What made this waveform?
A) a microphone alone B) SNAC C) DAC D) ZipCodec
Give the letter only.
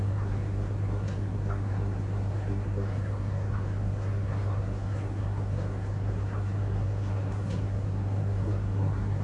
B